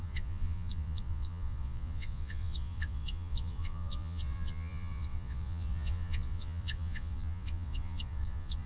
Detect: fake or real fake